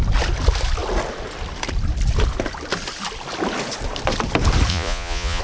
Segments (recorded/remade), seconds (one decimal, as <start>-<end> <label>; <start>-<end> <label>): 0.0-4.7 recorded; 4.7-5.4 remade